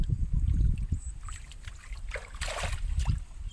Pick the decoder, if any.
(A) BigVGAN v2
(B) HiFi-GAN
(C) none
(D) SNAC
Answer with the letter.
C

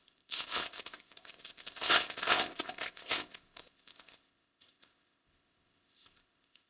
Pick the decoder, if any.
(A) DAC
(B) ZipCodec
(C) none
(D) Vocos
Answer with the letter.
B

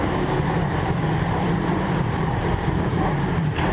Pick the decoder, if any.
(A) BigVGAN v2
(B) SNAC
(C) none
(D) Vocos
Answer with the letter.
A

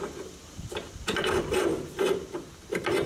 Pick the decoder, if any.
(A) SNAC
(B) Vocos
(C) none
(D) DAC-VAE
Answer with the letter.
C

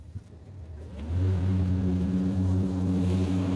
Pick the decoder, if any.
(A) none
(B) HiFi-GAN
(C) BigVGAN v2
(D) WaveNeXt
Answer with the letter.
C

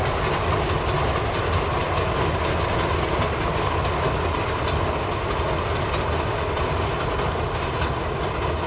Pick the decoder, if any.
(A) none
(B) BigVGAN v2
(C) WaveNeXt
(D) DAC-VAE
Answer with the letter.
A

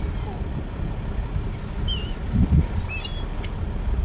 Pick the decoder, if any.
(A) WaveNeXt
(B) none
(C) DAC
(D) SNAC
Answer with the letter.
B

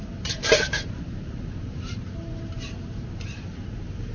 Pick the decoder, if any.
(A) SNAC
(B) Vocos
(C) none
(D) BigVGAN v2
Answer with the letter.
D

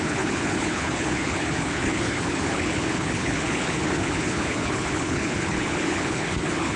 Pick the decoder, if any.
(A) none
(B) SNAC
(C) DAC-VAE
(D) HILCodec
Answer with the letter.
D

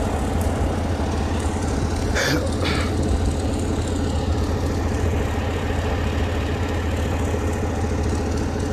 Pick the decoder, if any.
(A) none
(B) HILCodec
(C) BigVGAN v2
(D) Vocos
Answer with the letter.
A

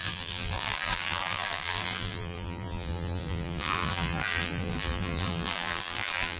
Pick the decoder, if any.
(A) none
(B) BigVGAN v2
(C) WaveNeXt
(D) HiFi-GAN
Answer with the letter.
B